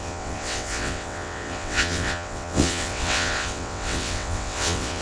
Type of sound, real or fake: fake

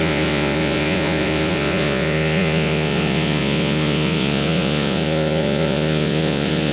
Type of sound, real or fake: fake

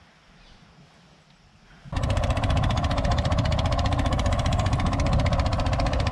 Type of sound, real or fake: real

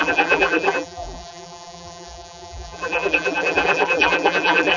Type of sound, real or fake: fake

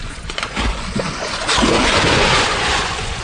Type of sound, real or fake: fake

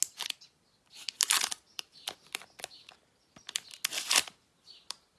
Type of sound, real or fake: real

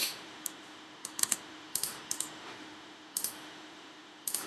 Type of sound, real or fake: fake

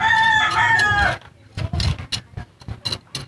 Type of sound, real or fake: real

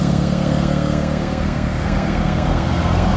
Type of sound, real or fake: fake